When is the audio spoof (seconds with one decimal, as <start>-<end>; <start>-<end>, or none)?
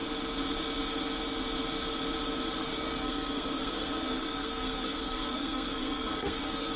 2.6-6.8